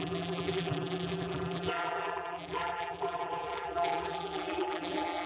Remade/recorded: remade